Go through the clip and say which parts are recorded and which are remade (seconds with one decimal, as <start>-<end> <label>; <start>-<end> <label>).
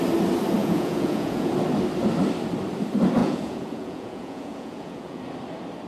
0.0-0.6 recorded; 0.6-1.5 remade; 1.5-3.2 recorded; 3.2-5.2 remade; 5.2-5.9 recorded